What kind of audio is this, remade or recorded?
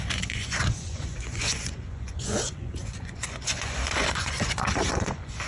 remade